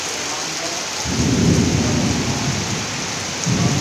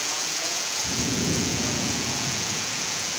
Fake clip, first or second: second